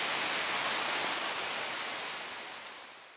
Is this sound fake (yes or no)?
no